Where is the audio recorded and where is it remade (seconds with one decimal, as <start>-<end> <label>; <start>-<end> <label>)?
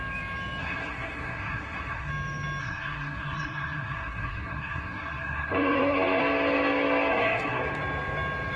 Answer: 0.0-0.6 recorded; 0.6-2.1 remade; 2.1-2.6 recorded; 2.6-6.2 remade; 6.2-7.1 recorded; 7.1-7.6 remade; 7.6-8.6 recorded